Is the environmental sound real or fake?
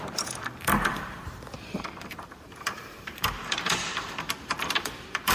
fake